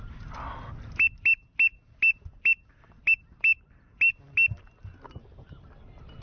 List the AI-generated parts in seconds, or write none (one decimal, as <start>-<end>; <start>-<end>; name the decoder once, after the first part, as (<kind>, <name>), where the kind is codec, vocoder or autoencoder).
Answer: none